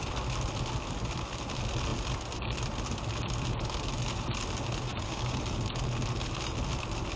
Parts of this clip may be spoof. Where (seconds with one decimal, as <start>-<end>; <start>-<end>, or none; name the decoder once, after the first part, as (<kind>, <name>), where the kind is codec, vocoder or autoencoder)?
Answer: 4.9-5.4 (codec, DAC)